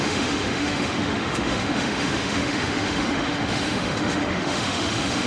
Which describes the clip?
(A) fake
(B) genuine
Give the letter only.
A